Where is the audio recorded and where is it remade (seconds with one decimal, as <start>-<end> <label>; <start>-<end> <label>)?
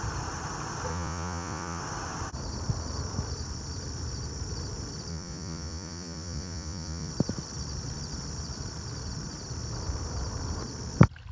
0.0-0.9 recorded; 0.9-1.8 remade; 1.8-5.1 recorded; 5.1-7.1 remade; 7.1-11.3 recorded